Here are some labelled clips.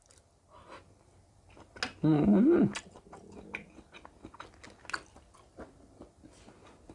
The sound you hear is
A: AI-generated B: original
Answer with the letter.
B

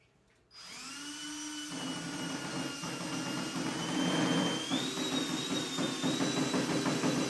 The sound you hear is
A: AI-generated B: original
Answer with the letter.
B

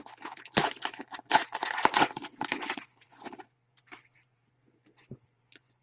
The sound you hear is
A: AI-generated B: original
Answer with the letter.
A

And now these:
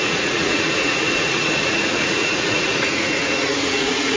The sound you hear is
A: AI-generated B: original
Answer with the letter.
A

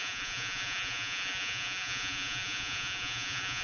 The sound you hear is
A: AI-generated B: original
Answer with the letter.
A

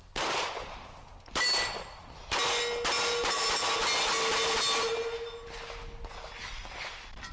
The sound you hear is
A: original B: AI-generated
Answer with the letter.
A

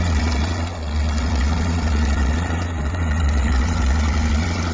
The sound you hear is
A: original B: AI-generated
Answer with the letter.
B